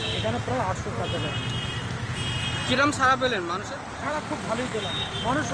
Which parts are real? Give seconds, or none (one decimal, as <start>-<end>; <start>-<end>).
0.0-5.5

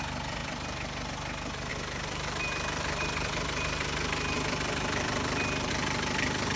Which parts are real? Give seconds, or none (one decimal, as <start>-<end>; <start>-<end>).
0.0-1.7; 5.7-6.6

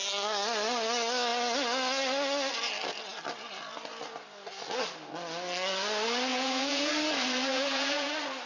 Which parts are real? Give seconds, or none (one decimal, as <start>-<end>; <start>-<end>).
0.0-6.3; 6.9-7.5; 8.1-8.5

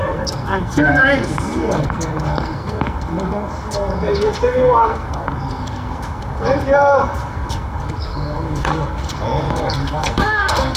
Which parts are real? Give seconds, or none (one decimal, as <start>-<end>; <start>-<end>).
none

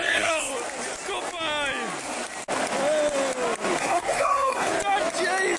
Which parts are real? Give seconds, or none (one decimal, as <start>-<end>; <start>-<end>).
0.5-3.8; 4.7-5.6

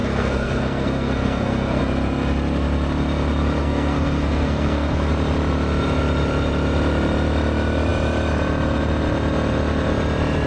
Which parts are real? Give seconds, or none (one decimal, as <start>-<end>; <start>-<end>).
1.8-3.6; 5.1-10.5

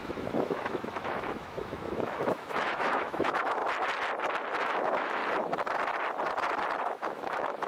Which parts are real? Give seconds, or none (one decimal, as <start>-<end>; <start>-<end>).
3.6-4.6; 5.2-6.8

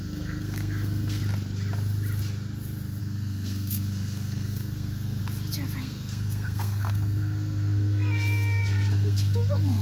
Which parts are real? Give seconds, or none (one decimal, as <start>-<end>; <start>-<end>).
1.2-3.0; 5.2-5.8